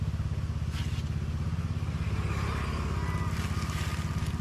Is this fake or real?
real